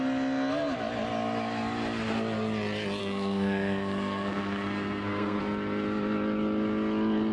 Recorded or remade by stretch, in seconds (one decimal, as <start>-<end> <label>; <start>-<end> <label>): 0.0-3.0 recorded; 3.0-5.4 remade; 5.4-7.3 recorded